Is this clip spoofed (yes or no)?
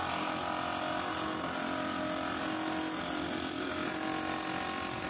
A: no